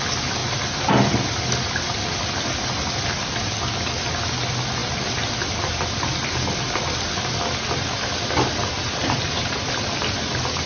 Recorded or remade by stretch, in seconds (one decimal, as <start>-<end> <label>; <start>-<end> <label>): 0.0-10.7 recorded